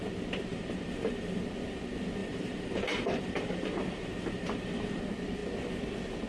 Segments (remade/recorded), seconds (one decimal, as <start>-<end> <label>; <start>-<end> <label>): 0.0-0.5 recorded; 0.5-1.4 remade; 1.4-2.2 recorded; 2.2-5.0 remade; 5.0-6.3 recorded